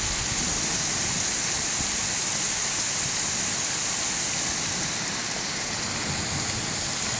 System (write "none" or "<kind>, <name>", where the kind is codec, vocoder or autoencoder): none